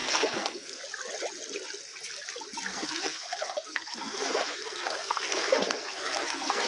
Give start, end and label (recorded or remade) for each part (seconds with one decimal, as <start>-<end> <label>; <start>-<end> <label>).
0.0-0.8 remade; 0.8-2.7 recorded; 2.7-6.7 remade